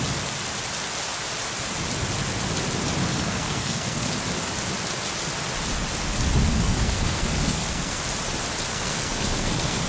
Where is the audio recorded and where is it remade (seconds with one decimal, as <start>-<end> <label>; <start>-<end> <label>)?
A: 0.0-3.1 recorded; 3.1-4.1 remade; 4.1-6.5 recorded; 6.5-8.0 remade; 8.0-8.7 recorded; 8.7-9.9 remade

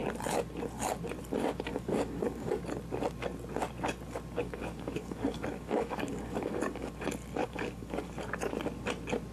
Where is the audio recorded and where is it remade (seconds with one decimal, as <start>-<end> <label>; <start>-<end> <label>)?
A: 0.0-1.7 recorded; 1.7-2.6 remade; 2.6-4.4 recorded; 4.4-6.9 remade; 6.9-7.4 recorded; 7.4-8.1 remade; 8.1-9.3 recorded

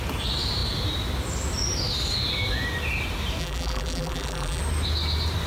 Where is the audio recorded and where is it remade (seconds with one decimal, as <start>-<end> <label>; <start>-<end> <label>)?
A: 0.0-3.4 recorded; 3.4-4.6 remade; 4.6-5.5 recorded

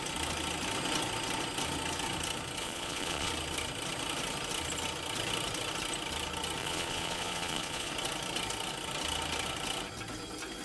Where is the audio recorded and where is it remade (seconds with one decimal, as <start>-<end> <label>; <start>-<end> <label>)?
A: 0.0-2.6 recorded; 2.6-3.3 remade; 3.3-6.6 recorded; 6.6-7.9 remade; 7.9-10.6 recorded